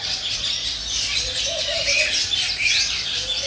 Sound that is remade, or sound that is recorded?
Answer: recorded